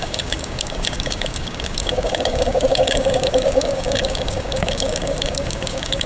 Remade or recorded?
remade